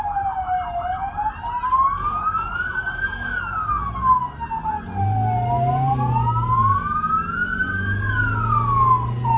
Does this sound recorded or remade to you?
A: recorded